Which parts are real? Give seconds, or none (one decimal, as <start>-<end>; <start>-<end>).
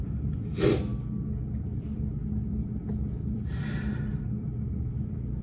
0.9-1.6; 4.5-5.4